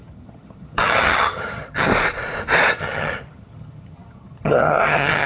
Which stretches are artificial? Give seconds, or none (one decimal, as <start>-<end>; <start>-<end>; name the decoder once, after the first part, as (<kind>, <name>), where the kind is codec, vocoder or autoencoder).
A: 0.0-1.9 (vocoder, HiFi-GAN); 2.7-5.3